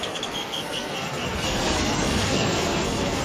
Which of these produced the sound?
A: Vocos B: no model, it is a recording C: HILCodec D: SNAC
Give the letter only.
D